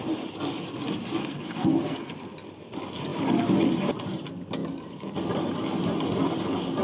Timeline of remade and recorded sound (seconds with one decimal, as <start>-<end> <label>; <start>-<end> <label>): 0.0-1.2 recorded; 1.2-2.1 remade; 2.1-6.8 recorded